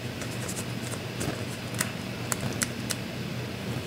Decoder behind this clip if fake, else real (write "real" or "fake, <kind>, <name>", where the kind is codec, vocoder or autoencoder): real